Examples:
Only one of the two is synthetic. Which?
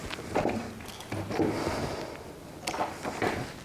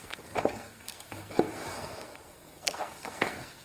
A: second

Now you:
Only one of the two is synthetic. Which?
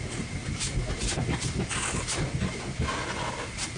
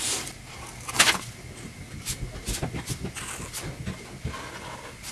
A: first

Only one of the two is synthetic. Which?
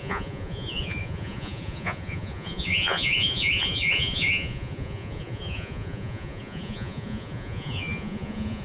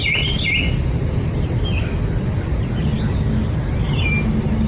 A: first